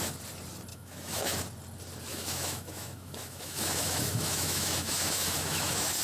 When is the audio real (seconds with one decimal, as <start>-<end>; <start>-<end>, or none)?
0.0-0.7; 1.4-2.1